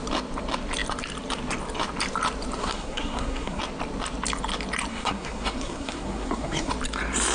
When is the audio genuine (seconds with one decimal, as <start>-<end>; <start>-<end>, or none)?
0.0-2.6; 3.6-4.9; 6.7-7.3